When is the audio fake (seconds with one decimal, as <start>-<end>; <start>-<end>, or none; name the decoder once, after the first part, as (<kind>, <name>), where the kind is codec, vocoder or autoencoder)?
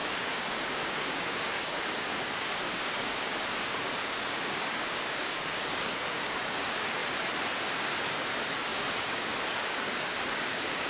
0.0-7.0 (codec, DAC); 7.8-10.9